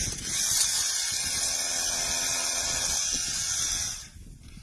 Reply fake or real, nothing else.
real